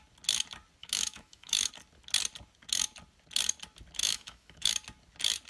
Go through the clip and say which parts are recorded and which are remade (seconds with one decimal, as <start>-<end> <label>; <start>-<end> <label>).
0.0-0.8 recorded; 0.8-1.7 remade; 1.7-4.0 recorded; 4.0-4.7 remade; 4.7-5.5 recorded